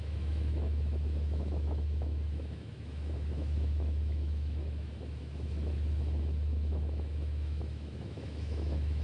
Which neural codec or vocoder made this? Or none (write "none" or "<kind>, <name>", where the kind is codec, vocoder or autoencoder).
autoencoder, DAC-VAE